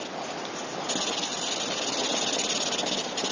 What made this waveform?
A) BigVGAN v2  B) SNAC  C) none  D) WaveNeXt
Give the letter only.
C